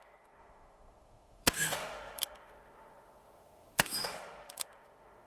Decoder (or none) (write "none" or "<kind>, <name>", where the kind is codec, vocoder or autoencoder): autoencoder, DAC-VAE